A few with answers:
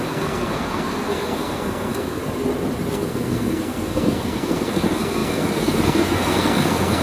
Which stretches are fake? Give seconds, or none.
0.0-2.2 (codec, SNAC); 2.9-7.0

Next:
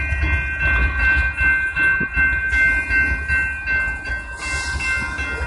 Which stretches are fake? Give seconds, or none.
none

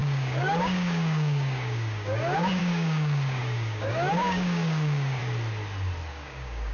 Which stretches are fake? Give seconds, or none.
0.0-5.2 (codec, DAC); 6.1-6.7

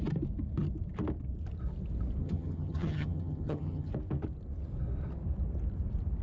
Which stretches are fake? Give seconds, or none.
2.2-3.9 (vocoder, HiFi-GAN)

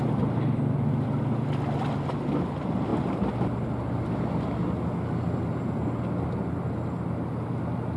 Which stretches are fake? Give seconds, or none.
none